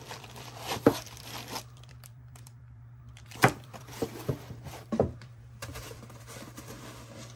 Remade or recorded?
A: remade